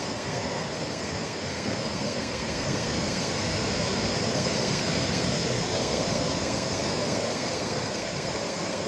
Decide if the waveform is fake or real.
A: fake